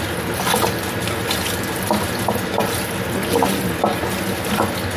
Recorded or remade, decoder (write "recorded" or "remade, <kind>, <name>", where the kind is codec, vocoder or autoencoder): recorded